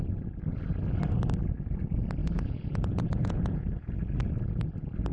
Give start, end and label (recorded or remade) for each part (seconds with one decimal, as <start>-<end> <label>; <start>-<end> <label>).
0.0-2.2 recorded; 2.2-3.9 remade; 3.9-5.1 recorded